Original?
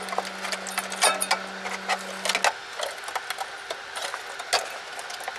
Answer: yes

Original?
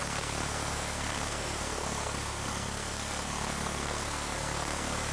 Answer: no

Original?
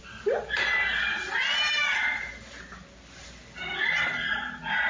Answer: yes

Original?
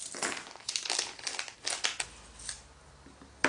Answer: yes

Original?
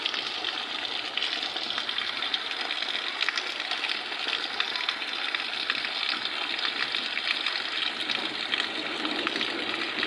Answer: yes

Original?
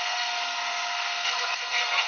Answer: no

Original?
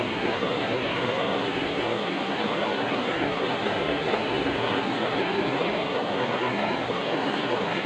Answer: no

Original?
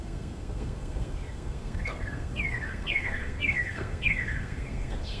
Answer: no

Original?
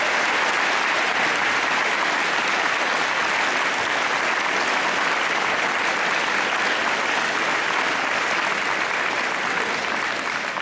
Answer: yes